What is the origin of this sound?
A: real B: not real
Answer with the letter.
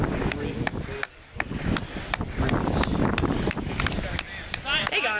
A